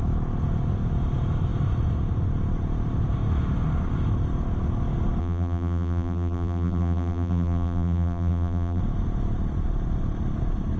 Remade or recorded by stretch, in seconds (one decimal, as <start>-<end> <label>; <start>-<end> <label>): 0.0-5.2 recorded; 5.2-8.8 remade; 8.8-10.8 recorded